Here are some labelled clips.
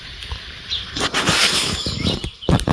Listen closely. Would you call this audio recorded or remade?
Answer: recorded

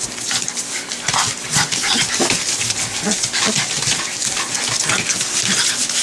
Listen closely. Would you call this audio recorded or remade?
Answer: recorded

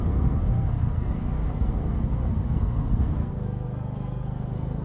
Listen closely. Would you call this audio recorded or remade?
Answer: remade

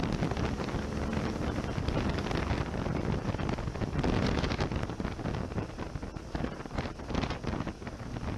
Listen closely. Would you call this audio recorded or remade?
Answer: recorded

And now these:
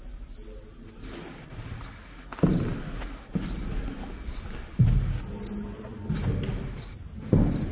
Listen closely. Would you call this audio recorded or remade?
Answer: recorded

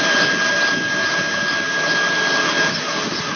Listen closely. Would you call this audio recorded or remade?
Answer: recorded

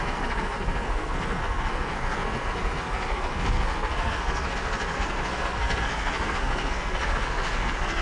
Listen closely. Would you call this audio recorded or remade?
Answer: remade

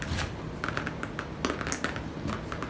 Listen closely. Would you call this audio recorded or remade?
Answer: recorded